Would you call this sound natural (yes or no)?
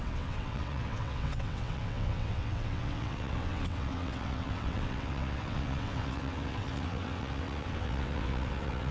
no